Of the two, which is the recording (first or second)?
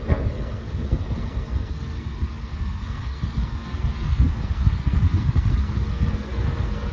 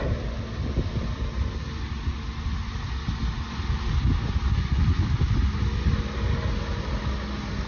second